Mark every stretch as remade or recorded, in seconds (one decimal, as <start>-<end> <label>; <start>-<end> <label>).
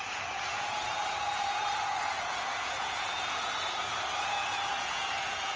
0.0-5.6 remade